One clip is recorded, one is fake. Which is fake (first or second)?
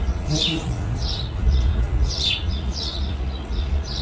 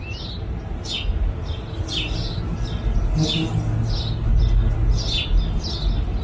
first